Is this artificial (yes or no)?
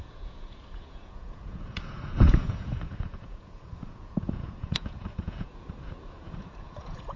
yes